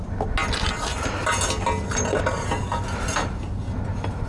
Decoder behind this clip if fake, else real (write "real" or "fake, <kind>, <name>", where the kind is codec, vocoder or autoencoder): real